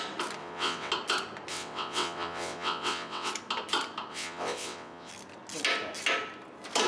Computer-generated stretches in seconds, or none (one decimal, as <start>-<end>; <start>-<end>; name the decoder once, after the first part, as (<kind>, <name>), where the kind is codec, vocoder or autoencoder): 0.4-0.9 (vocoder, WaveNeXt); 1.5-3.3; 4.1-5.1